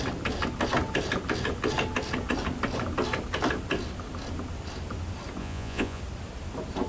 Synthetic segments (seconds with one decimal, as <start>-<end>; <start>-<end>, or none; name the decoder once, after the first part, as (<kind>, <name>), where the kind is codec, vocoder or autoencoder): 5.4-6.0 (vocoder, Vocos)

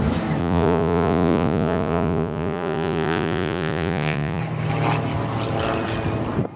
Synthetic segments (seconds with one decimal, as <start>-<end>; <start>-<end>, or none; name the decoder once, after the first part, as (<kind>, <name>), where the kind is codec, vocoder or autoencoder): 0.4-4.4 (vocoder, Vocos)

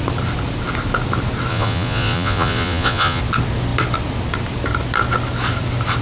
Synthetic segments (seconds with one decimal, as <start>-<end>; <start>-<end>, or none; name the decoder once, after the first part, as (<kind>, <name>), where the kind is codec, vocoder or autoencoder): 1.5-3.2 (vocoder, Vocos)

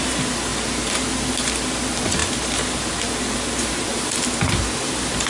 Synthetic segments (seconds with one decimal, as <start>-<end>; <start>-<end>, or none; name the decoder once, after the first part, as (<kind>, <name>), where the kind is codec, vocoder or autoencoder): none

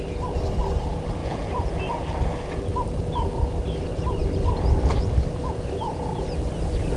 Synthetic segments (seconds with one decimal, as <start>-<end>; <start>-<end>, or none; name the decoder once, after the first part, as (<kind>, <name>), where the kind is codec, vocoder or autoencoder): 1.2-1.8 (vocoder, Vocos)

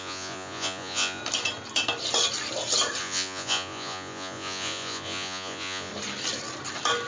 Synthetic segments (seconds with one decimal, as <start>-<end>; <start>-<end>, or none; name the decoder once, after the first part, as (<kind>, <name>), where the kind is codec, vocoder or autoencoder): 0.0-1.2 (vocoder, Vocos); 3.0-5.9

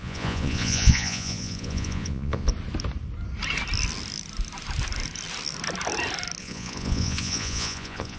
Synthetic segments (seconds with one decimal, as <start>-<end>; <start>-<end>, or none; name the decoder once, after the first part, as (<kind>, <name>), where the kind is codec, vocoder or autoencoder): 0.0-2.5 (vocoder, Vocos); 6.4-8.2